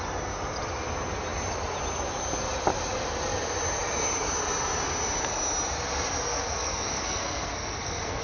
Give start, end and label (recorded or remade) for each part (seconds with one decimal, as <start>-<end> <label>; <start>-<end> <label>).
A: 0.0-6.3 recorded; 6.3-8.2 remade